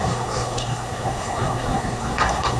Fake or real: fake